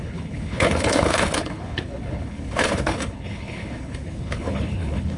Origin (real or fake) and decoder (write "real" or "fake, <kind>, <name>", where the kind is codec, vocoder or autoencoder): fake, codec, HILCodec